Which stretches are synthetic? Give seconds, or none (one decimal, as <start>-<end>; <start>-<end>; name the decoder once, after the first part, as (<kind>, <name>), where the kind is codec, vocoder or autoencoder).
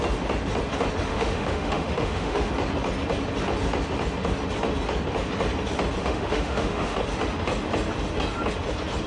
1.1-2.5 (autoencoder, DAC-VAE); 6.0-7.0